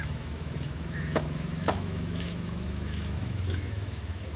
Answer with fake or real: fake